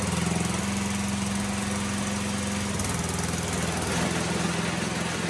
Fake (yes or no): no